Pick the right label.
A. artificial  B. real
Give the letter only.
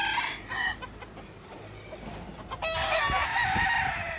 B